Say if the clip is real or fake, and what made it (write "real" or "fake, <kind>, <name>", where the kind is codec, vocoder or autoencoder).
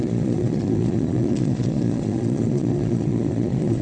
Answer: fake, vocoder, Vocos